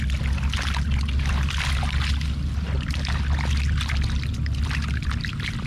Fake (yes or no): no